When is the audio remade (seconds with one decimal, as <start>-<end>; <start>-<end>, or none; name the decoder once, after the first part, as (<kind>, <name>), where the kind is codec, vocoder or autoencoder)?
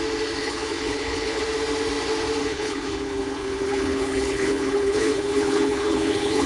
0.4-1.4 (codec, HILCodec); 2.4-6.5